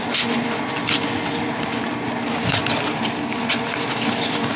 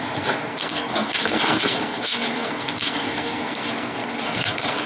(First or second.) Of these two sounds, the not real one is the second